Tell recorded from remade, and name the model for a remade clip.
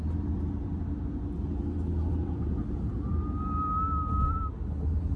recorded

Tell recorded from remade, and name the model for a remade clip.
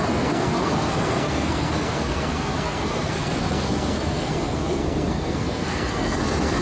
remade, codec, SNAC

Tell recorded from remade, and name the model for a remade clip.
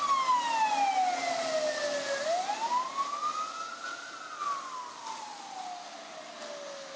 recorded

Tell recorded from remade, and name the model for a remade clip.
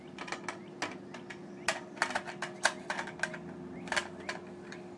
recorded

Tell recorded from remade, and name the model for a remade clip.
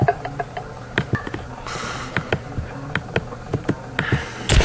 recorded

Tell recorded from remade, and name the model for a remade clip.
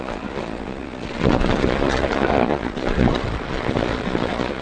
remade, vocoder, Vocos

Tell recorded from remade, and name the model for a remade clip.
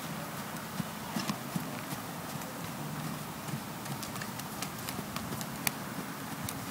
recorded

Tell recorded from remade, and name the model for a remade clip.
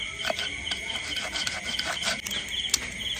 recorded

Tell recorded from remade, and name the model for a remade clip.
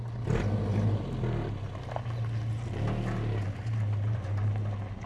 recorded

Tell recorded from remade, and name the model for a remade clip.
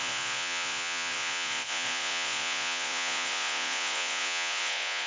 remade, vocoder, Vocos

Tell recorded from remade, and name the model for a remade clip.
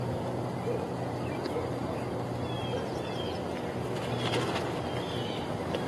recorded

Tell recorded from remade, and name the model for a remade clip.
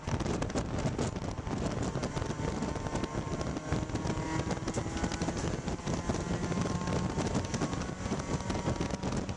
recorded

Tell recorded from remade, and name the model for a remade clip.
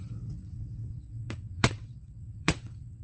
remade, vocoder, WaveNeXt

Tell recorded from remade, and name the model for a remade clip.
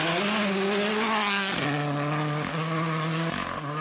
recorded